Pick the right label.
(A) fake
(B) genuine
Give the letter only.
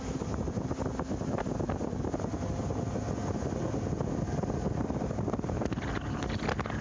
B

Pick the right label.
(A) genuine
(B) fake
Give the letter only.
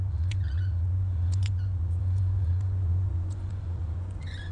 B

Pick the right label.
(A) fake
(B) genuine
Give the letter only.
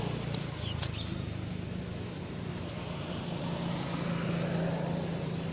B